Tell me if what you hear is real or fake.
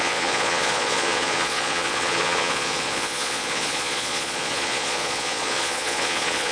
fake